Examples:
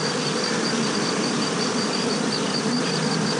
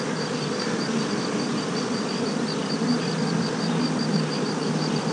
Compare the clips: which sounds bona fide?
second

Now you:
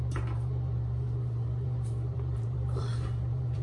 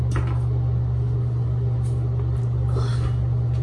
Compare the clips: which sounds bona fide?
second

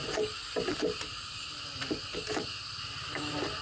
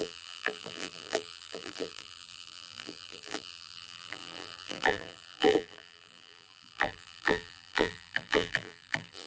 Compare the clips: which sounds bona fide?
first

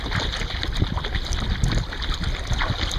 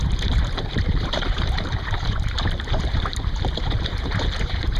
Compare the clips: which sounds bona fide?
first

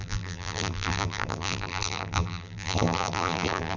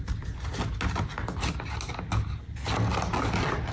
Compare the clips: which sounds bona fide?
second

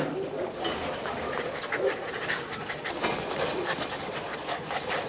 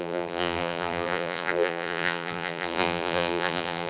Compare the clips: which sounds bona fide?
first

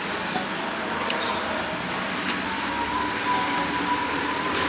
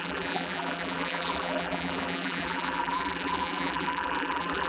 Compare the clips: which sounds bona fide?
first